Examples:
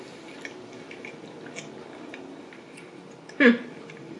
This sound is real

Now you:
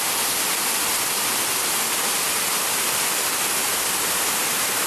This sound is real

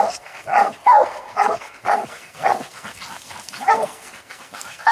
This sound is fake